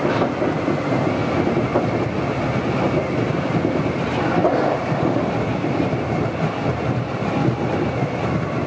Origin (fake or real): real